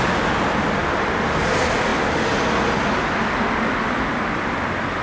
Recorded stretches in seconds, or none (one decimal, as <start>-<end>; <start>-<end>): 0.0-5.0